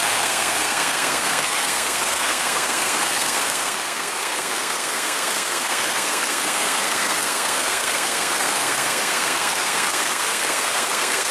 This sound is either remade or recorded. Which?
remade